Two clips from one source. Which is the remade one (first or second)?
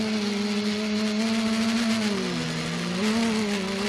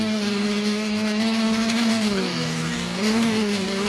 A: second